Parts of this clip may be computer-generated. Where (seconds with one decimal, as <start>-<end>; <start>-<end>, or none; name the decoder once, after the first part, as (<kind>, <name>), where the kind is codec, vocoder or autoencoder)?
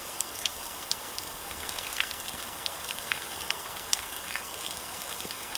0.0-5.6 (codec, SNAC)